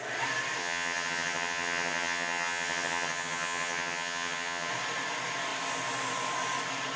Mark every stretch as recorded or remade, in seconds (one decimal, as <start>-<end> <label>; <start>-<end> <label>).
0.0-0.6 recorded; 0.6-4.7 remade; 4.7-7.0 recorded